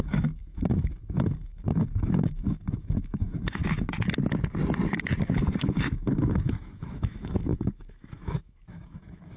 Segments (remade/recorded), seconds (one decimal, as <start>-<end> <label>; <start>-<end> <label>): 0.0-3.6 remade; 3.6-5.6 recorded; 5.6-9.4 remade